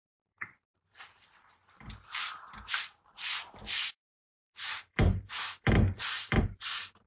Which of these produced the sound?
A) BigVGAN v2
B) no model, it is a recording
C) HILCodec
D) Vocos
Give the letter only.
A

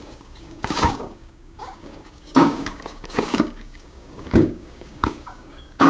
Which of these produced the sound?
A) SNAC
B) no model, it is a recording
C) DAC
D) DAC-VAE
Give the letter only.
C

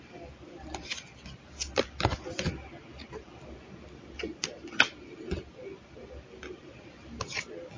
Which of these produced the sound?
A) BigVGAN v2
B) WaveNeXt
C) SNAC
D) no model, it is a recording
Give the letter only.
D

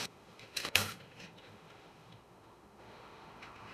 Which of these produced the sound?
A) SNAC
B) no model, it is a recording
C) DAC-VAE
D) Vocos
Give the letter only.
C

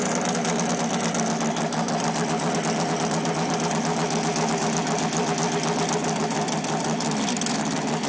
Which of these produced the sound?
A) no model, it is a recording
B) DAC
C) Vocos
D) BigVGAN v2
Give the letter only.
A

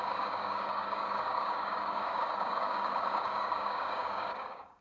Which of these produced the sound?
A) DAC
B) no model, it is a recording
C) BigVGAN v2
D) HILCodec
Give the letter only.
A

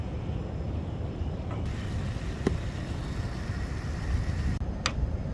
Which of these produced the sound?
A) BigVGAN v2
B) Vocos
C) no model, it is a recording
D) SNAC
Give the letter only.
C